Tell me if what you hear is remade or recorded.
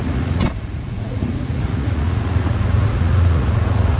remade